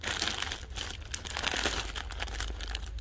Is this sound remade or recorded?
recorded